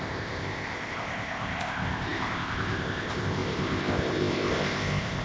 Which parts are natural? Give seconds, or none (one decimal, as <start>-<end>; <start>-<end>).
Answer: none